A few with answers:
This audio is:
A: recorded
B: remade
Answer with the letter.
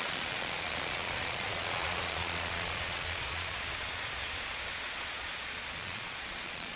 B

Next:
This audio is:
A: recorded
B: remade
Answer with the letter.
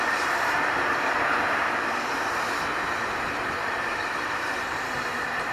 B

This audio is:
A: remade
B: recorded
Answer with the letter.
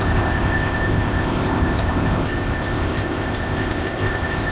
A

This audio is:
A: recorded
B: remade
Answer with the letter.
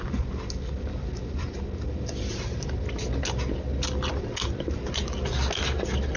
A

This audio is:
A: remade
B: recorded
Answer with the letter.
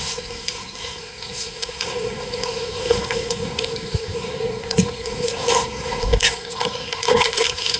A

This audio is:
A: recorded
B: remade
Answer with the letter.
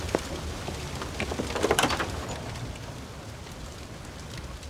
A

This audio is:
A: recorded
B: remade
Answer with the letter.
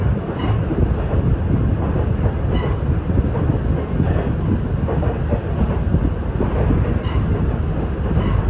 A